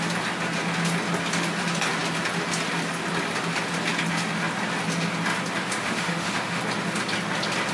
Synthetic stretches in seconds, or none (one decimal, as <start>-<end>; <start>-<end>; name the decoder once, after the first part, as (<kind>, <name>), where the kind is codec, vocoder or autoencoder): 5.8-6.6 (autoencoder, DAC-VAE)